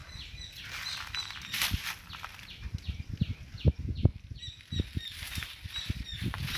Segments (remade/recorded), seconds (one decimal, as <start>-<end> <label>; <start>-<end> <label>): 0.0-6.6 recorded